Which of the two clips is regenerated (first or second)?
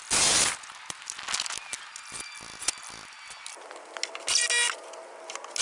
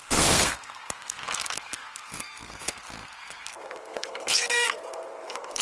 second